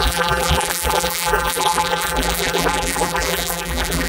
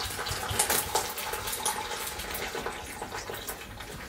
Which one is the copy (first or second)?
first